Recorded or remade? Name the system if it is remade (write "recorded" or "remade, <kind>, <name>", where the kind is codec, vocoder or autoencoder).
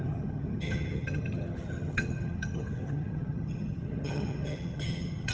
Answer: remade, vocoder, HiFi-GAN